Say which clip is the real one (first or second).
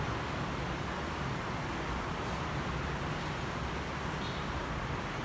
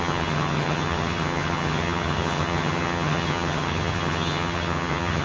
first